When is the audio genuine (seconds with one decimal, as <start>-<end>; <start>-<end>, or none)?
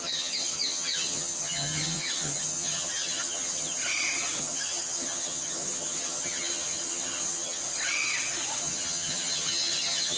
3.8-4.4; 7.6-8.6